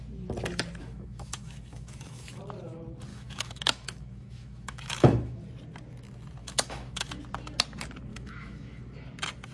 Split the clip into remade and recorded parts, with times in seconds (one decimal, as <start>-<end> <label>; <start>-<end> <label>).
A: 0.0-0.8 recorded; 0.8-2.4 remade; 2.4-3.1 recorded; 3.1-5.4 remade; 5.4-6.4 recorded; 6.4-7.1 remade; 7.1-8.1 recorded; 8.1-8.8 remade; 8.8-9.5 recorded